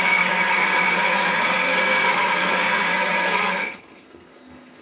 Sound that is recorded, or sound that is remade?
remade